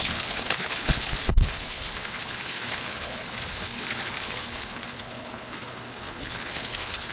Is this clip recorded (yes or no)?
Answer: no